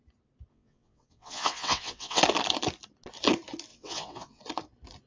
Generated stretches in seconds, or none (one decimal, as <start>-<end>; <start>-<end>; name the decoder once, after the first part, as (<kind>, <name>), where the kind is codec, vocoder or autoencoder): 0.5-2.2 (vocoder, WaveNeXt); 3.7-4.4